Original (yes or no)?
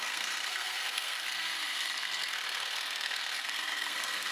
no